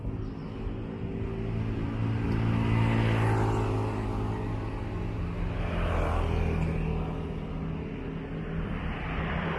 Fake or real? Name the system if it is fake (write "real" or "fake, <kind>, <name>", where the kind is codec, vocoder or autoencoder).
real